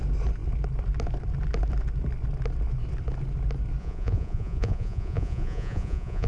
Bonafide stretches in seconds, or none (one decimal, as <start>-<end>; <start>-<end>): 0.0-3.8